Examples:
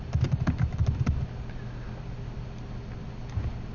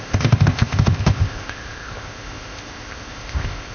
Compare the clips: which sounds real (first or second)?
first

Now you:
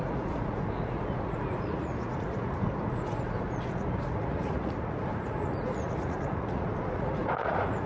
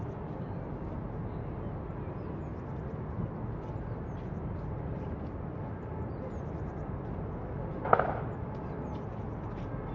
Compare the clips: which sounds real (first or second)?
second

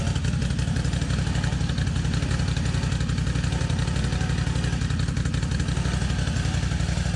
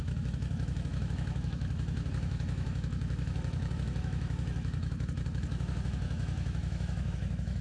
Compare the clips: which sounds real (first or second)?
first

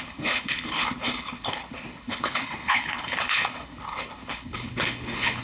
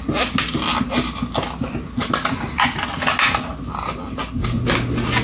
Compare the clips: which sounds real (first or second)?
second